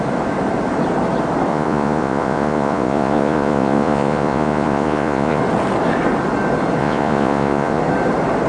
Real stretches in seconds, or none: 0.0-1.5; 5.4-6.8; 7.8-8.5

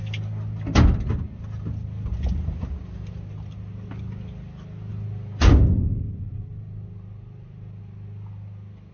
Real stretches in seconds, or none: 0.0-8.9

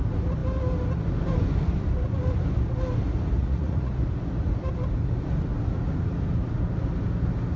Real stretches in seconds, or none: 0.0-3.4; 3.9-7.6

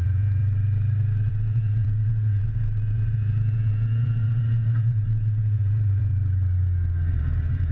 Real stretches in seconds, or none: 0.4-1.3; 6.1-7.1

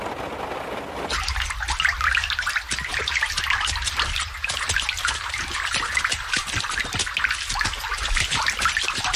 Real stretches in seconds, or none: 0.0-9.2

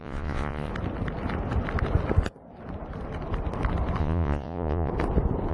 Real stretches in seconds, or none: 0.7-4.0; 4.9-5.5